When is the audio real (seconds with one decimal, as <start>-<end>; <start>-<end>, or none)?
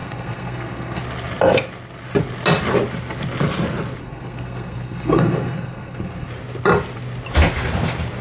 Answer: 1.0-4.0; 6.3-8.2